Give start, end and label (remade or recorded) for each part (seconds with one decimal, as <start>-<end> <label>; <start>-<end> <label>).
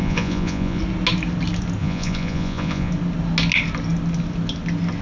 0.0-0.8 remade; 0.8-1.8 recorded; 1.8-2.9 remade; 2.9-5.0 recorded